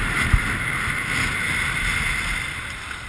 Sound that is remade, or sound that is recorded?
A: recorded